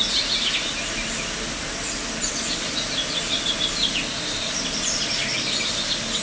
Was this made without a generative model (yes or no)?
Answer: yes